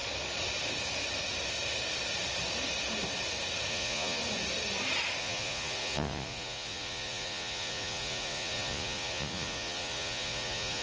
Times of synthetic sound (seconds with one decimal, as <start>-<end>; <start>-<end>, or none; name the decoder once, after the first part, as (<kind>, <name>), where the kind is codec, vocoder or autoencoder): 3.7-4.2 (vocoder, Vocos); 5.2-10.8